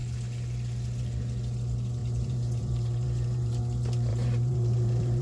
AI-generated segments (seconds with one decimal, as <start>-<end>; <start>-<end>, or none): 2.0-3.6; 4.1-5.2